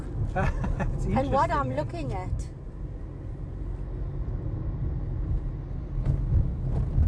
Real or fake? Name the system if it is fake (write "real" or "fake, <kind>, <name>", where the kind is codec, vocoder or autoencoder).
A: real